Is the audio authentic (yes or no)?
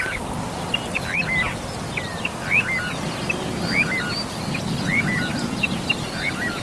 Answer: yes